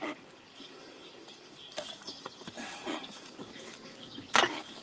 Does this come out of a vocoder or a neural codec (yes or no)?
yes